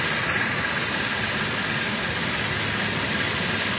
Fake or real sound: real